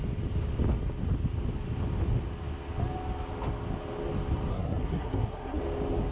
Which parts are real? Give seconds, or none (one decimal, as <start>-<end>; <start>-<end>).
0.0-4.5; 5.6-6.1